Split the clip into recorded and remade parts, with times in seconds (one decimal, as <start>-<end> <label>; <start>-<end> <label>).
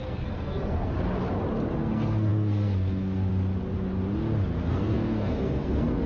0.0-0.9 remade; 0.9-1.8 recorded; 1.8-3.3 remade; 3.3-4.6 recorded; 4.6-6.1 remade